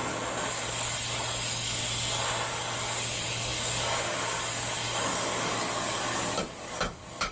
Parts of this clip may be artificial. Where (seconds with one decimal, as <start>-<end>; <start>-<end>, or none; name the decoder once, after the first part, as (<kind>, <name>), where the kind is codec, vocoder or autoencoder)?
0.5-1.8 (codec, DAC); 2.5-7.3